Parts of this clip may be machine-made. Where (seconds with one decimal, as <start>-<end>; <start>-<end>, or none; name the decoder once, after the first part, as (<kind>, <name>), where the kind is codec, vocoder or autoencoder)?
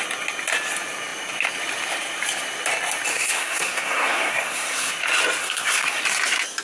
3.1-4.9 (codec, SNAC); 5.4-6.0